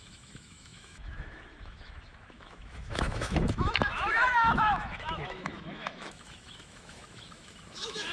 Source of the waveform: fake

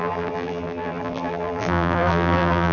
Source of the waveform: fake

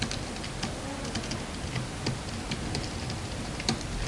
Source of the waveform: real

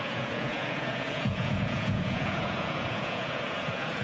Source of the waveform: fake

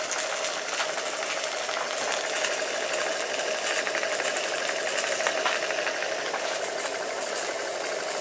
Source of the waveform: real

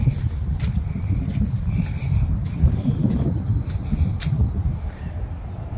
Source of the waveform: real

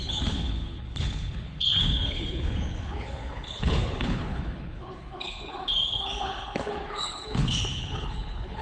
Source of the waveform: fake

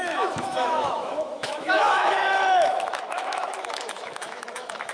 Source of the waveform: fake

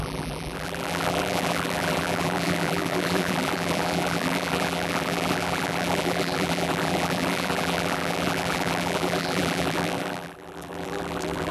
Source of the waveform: fake